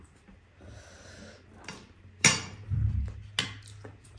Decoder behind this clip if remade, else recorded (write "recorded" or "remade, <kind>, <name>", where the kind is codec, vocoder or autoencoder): recorded